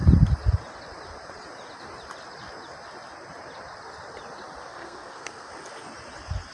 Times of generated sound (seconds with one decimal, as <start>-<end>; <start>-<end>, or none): 4.7-5.5